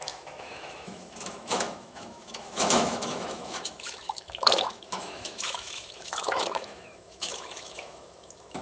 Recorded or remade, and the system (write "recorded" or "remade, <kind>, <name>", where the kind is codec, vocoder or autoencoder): remade, autoencoder, DAC-VAE